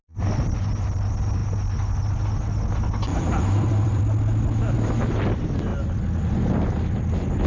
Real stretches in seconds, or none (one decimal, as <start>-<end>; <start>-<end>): 0.0-3.1; 4.0-5.7; 6.3-7.5